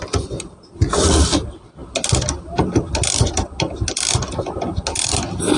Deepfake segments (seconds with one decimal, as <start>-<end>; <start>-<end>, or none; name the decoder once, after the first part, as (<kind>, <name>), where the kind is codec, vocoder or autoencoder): none